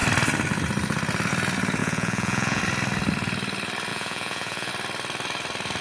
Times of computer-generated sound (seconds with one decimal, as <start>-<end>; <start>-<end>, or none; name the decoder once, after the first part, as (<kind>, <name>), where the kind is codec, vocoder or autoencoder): 1.8-2.6 (vocoder, Vocos); 3.9-4.7